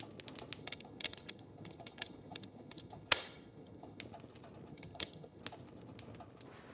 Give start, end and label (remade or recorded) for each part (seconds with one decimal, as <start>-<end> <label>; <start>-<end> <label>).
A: 0.0-0.6 recorded; 0.6-4.0 remade; 4.0-4.7 recorded; 4.7-5.4 remade; 5.4-6.7 recorded